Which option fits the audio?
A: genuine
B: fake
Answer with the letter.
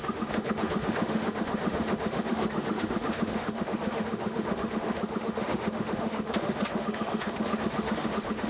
B